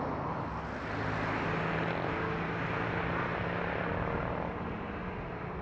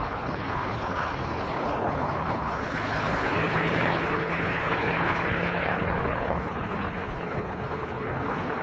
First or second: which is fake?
second